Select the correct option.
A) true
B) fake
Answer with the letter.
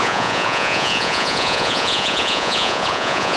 B